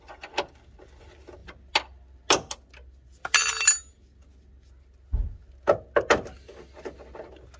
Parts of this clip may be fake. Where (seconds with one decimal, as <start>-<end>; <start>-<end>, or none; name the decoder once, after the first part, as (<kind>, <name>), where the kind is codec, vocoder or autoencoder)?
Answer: none